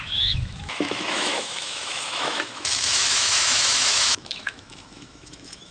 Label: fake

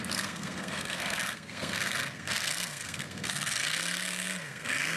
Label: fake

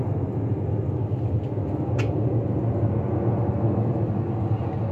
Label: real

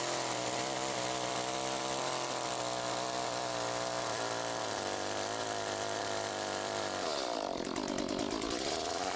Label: fake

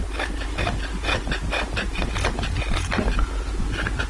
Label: real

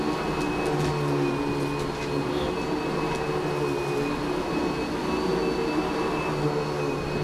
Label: real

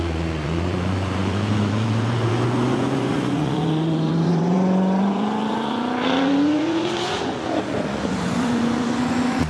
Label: fake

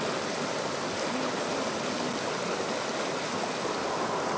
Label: real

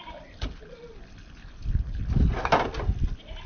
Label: real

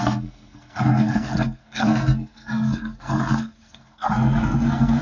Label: fake